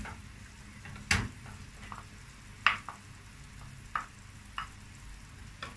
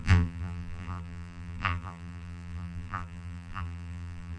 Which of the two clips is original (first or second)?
first